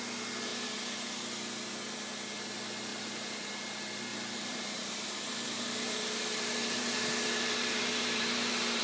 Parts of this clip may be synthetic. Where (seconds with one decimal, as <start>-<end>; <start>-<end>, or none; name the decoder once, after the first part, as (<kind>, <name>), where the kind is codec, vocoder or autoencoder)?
2.9-3.5 (vocoder, BigVGAN v2); 4.1-8.8